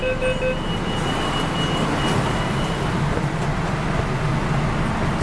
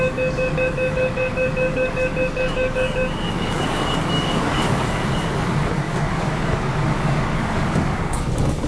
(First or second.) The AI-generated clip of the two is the second